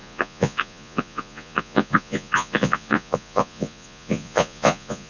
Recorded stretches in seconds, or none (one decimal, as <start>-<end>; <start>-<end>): none